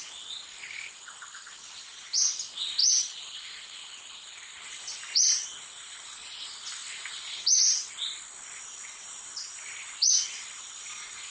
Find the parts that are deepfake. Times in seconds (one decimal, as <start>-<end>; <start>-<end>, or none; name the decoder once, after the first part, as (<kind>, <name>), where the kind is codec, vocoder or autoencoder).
none